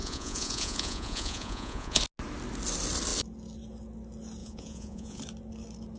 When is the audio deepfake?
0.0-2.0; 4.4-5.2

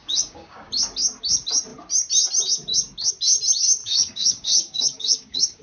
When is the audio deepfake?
0.0-0.7; 3.8-5.6

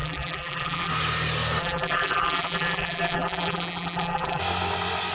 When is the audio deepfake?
0.0-0.9; 1.6-4.4

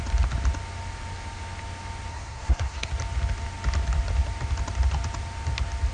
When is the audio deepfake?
2.1-2.9

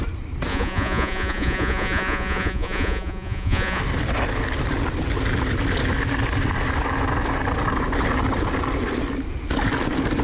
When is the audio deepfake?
0.5-3.8

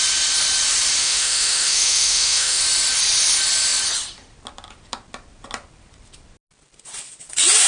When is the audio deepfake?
1.0-2.6